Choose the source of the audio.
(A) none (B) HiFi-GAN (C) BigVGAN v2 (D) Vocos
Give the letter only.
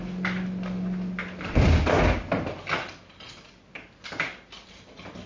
A